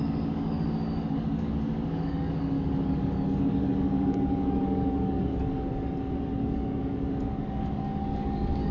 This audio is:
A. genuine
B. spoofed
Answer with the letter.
B